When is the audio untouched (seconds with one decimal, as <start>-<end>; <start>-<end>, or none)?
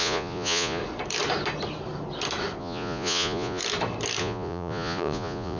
0.8-2.6; 3.6-4.2